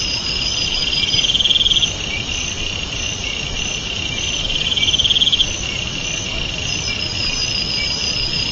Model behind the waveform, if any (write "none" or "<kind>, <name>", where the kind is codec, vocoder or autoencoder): none